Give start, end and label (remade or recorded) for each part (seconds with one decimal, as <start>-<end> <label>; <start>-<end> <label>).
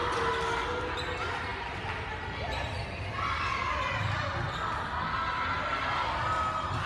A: 0.0-6.9 recorded